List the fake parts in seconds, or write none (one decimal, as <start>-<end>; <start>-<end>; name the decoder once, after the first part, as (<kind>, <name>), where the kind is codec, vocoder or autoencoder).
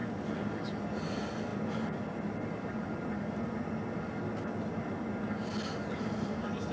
none